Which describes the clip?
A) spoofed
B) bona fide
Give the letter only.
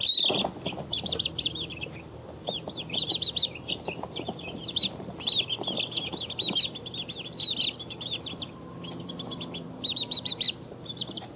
A